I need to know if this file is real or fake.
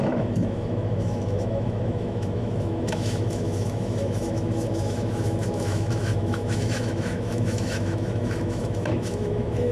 fake